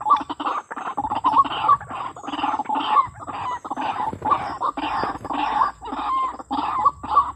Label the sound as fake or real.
real